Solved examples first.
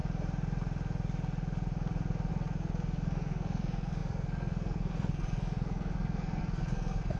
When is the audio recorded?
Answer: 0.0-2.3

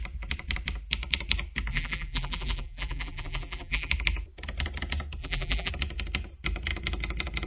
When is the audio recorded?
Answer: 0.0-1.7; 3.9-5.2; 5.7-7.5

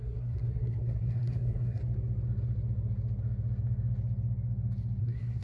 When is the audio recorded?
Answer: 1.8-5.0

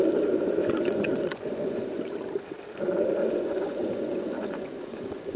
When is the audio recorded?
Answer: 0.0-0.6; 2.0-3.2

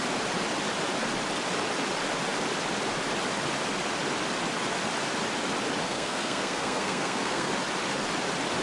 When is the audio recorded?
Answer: 0.0-5.8; 7.5-8.6